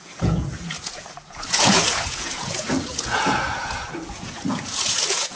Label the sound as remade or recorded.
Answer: remade